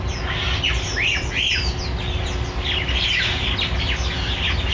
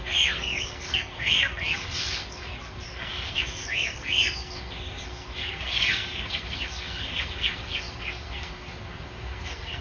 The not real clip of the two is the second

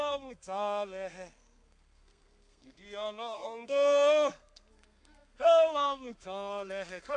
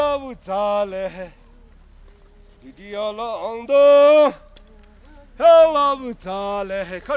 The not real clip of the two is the first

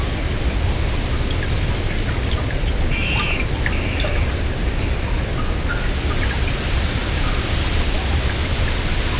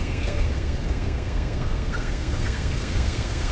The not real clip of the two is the second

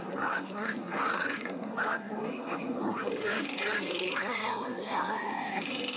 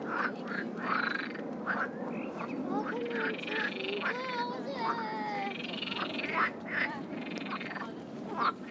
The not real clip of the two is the first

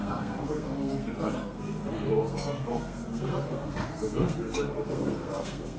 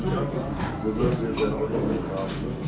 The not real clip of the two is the first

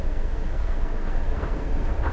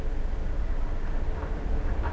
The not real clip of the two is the first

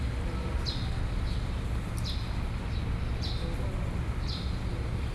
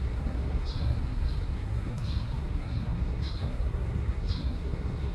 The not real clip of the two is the second